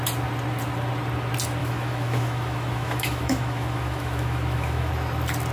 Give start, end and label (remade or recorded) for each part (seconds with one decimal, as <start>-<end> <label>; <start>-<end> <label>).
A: 0.0-1.6 recorded; 1.6-4.9 remade; 4.9-5.5 recorded